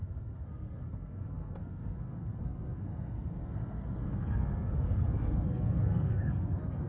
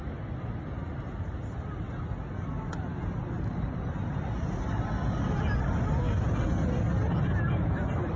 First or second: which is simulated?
first